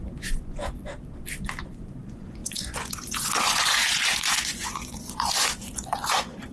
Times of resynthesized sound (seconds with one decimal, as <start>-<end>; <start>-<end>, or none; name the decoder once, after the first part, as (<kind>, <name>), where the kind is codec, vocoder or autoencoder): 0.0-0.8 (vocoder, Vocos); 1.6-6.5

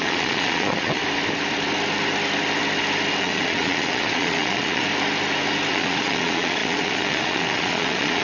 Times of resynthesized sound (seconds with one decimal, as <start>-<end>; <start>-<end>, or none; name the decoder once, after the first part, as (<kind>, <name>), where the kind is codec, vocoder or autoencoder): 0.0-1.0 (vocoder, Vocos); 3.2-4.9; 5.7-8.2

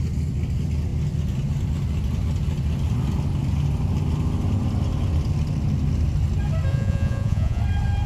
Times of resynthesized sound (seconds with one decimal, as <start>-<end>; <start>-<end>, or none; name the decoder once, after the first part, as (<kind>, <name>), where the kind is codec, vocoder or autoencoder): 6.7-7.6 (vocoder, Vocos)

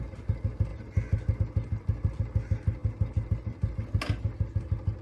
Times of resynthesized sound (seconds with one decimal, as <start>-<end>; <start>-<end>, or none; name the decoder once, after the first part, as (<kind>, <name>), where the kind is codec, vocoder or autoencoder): none

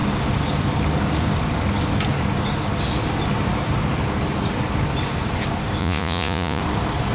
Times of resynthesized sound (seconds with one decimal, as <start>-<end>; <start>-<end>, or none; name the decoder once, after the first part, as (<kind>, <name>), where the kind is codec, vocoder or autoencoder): 5.8-6.6 (vocoder, Vocos)